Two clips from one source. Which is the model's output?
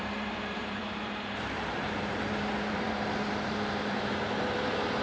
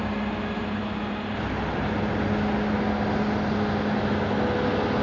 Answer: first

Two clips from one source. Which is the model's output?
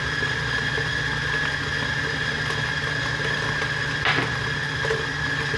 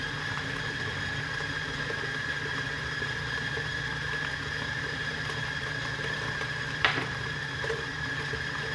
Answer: second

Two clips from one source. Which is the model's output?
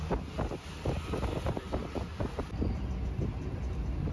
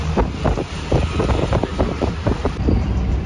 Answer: second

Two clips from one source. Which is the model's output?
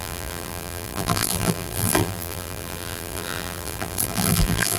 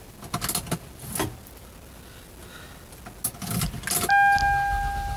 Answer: first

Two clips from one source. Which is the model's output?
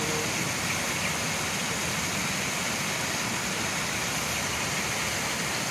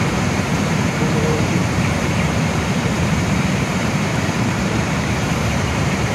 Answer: second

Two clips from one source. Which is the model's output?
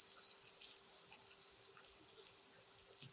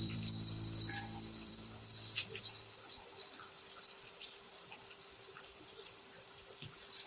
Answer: second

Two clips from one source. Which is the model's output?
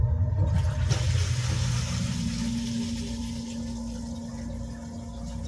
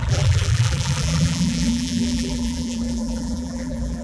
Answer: second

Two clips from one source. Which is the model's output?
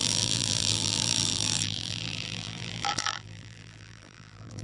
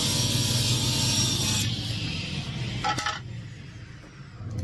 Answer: first